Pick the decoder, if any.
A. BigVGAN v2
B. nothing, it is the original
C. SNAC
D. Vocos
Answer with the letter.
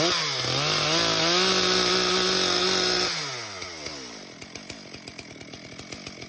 B